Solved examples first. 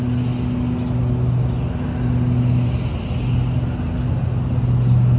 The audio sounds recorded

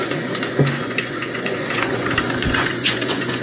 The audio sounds remade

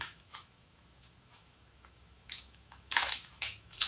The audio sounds remade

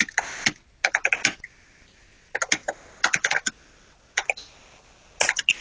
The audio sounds recorded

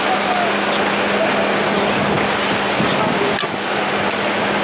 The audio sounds recorded